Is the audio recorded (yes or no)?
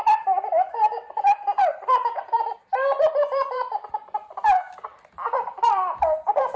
no